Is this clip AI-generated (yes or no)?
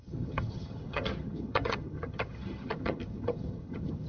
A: yes